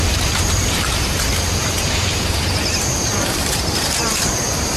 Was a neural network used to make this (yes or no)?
yes